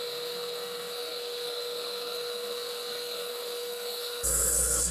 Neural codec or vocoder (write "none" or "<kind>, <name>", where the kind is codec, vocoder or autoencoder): codec, SNAC